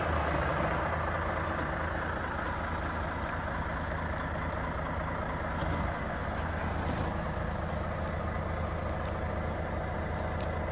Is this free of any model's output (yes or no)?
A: yes